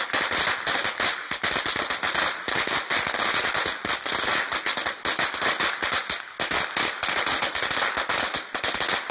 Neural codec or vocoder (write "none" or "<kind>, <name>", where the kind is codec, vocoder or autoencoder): none